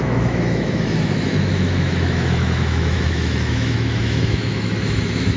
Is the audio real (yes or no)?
no